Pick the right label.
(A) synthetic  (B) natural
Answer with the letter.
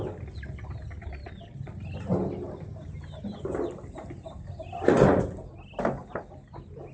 B